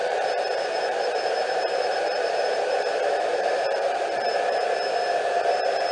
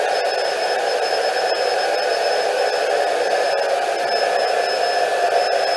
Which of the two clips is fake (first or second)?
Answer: first